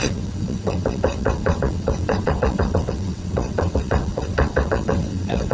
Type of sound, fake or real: fake